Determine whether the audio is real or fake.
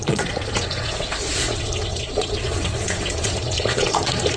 fake